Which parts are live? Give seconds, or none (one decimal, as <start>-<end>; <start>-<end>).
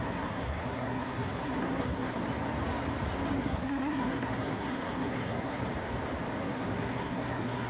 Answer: 2.2-3.3; 5.6-6.4